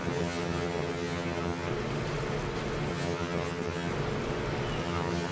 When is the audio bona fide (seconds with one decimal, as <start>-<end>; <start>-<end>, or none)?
1.7-2.9; 3.9-4.8